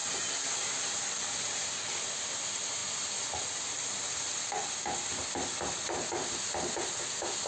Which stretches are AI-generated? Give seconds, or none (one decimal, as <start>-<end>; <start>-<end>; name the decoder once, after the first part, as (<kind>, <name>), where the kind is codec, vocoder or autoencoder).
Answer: none